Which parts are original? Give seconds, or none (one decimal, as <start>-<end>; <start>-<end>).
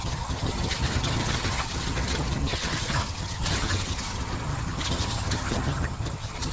none